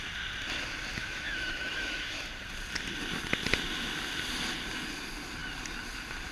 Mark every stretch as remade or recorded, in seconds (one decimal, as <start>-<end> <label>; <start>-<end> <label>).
0.0-1.0 recorded; 1.0-2.3 remade; 2.3-6.3 recorded